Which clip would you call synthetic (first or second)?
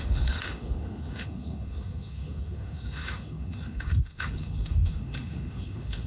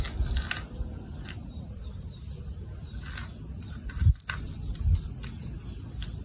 first